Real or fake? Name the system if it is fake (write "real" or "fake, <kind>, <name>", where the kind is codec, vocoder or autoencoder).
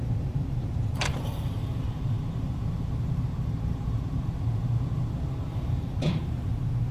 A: fake, vocoder, BigVGAN v2